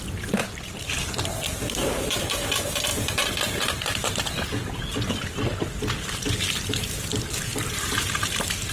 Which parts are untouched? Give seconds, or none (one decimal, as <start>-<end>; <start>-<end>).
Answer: 0.0-0.4; 0.9-2.9; 3.7-8.7